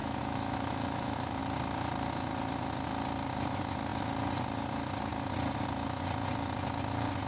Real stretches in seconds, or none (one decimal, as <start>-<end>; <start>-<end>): 1.4-7.3